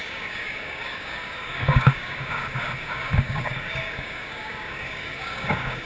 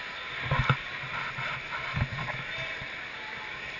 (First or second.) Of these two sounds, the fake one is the first